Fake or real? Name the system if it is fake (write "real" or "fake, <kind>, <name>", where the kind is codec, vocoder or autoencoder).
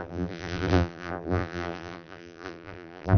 fake, vocoder, BigVGAN v2